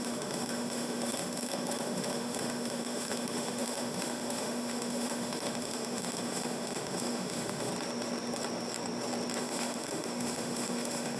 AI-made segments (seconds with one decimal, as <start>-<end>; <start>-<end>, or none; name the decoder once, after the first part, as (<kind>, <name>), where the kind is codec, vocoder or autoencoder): 0.0-7.7 (autoencoder, DAC-VAE); 9.4-11.2